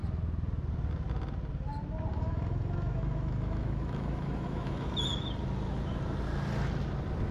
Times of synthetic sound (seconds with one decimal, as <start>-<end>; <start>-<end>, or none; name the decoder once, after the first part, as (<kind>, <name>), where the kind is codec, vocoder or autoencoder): 2.1-4.9 (autoencoder, DAC-VAE)